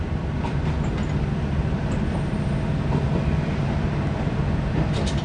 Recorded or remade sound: remade